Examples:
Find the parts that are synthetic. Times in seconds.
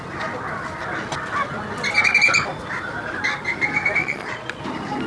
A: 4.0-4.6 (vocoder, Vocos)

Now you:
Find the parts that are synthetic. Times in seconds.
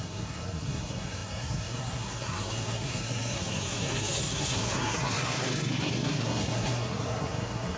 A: 0.0-7.8 (codec, SNAC)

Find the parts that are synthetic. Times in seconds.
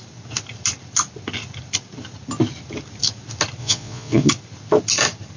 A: 3.6-4.3 (vocoder, Vocos)